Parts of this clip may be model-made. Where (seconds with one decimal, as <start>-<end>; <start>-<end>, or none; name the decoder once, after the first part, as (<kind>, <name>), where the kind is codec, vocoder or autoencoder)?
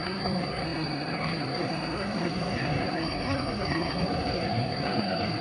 0.0-5.4 (codec, SNAC)